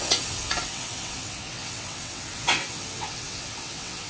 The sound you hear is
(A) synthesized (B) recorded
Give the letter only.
A